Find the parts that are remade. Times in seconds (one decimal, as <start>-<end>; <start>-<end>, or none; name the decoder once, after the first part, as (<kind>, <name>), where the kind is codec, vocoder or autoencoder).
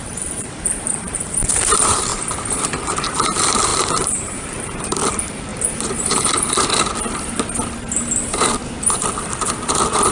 0.0-2.1 (vocoder, BigVGAN v2); 3.0-5.5